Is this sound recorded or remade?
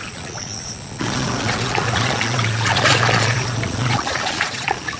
remade